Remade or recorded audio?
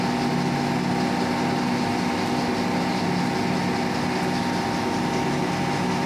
recorded